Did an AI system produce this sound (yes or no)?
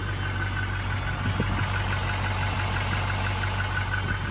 no